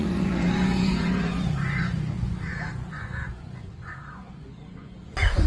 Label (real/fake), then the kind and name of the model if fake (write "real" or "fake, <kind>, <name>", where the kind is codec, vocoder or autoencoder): fake, vocoder, Vocos